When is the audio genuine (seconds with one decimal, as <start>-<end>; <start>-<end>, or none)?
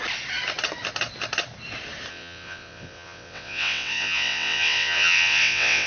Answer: 0.0-2.1